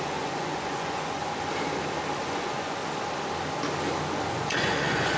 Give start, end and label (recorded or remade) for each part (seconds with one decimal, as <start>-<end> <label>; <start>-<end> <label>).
0.0-1.2 remade; 1.2-2.2 recorded; 2.2-2.8 remade; 2.8-4.3 recorded; 4.3-5.2 remade